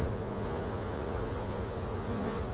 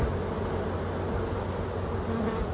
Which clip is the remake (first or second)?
first